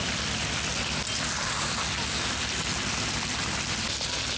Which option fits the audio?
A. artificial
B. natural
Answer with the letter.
B